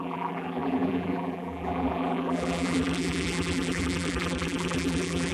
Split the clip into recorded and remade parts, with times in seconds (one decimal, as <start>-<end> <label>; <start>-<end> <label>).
0.0-5.3 remade